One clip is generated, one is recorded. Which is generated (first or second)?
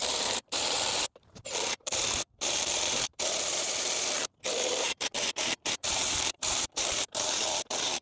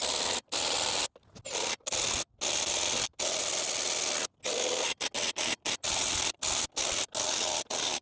first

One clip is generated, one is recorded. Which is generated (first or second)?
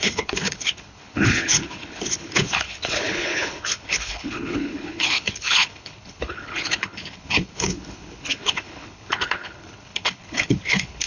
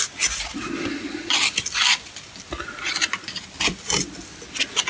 first